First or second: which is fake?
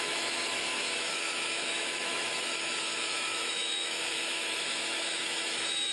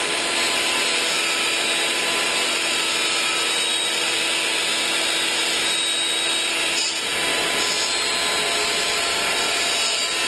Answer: first